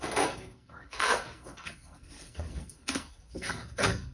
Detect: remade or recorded remade